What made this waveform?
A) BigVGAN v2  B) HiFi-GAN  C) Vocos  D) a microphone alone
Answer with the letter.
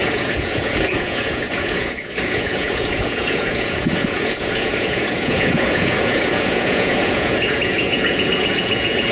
C